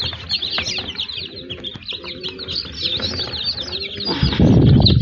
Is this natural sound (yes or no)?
yes